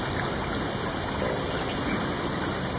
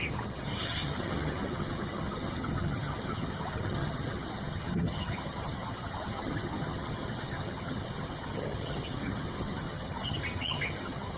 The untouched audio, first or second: first